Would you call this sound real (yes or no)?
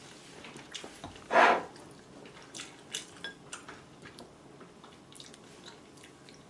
yes